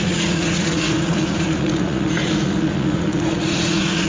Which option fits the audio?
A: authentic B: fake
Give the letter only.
B